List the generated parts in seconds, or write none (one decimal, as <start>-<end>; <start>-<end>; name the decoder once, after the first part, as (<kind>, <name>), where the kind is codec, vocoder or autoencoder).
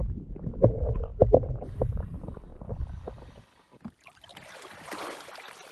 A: 0.0-2.5 (vocoder, BigVGAN v2); 3.9-4.3